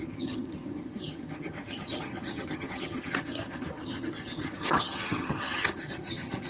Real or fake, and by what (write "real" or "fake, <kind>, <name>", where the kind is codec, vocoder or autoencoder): fake, vocoder, HiFi-GAN